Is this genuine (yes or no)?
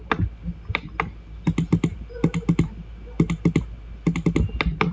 yes